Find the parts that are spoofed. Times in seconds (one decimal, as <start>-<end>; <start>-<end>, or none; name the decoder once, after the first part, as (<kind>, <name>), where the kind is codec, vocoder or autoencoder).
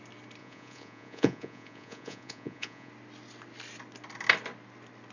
0.4-2.9 (vocoder, Vocos)